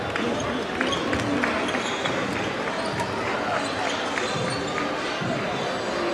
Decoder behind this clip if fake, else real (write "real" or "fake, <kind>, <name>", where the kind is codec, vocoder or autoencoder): real